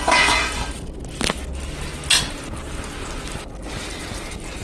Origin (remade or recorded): recorded